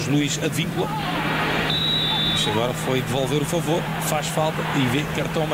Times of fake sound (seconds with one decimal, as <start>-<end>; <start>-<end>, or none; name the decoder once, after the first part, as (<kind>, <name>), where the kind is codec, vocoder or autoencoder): 0.0-1.8 (vocoder, BigVGAN v2); 3.5-5.5